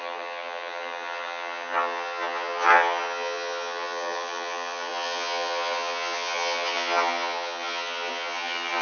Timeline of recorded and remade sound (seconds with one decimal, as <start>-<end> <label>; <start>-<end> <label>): 0.0-8.8 remade